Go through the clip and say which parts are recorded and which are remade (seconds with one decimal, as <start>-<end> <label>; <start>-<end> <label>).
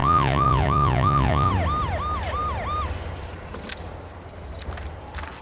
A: 0.0-1.5 remade; 1.5-5.4 recorded